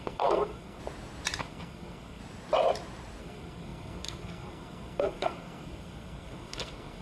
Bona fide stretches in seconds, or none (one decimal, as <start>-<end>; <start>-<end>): 0.8-1.4; 2.2-3.2